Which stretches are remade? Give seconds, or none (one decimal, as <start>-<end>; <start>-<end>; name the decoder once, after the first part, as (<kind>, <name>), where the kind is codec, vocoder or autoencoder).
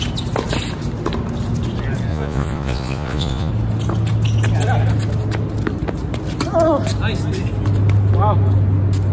2.1-3.5 (vocoder, Vocos)